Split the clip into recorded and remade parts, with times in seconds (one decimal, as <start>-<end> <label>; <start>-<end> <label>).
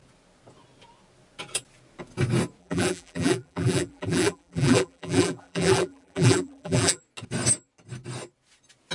0.0-2.6 recorded; 2.6-7.0 remade; 7.0-8.9 recorded